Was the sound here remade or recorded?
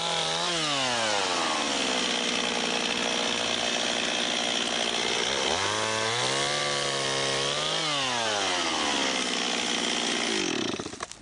recorded